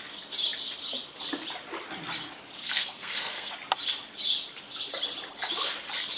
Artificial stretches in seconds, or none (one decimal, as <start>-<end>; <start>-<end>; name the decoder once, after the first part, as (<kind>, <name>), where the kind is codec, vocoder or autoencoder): 2.6-3.5 (codec, SNAC)